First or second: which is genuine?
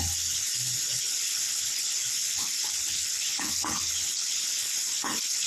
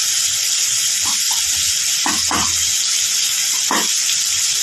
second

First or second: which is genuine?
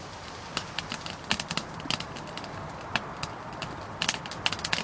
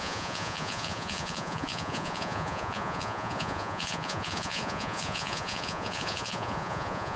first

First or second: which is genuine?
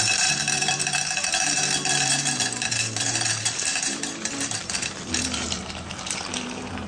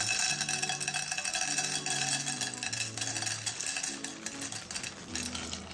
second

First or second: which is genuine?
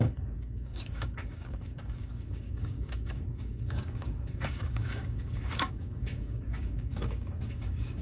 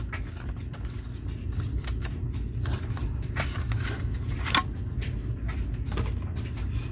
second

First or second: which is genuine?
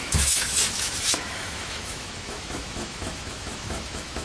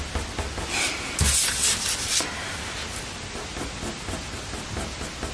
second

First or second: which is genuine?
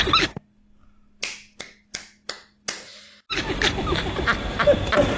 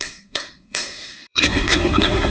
first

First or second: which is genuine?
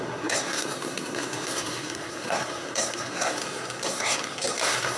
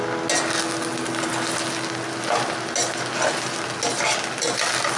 second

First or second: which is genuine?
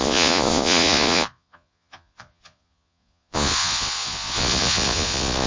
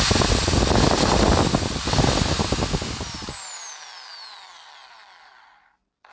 second